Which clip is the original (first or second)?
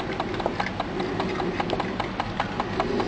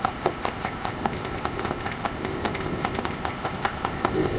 first